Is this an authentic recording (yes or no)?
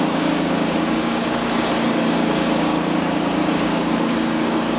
no